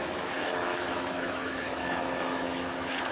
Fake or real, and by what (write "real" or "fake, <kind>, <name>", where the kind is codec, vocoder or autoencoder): fake, autoencoder, DAC-VAE